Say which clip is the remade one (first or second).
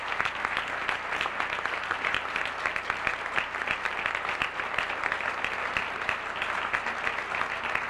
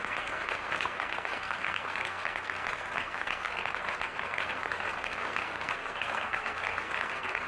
second